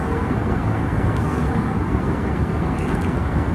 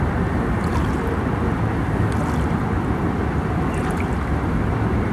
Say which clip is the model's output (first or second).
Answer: first